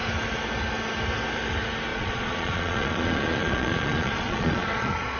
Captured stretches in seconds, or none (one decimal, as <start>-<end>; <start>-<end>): 0.0-1.9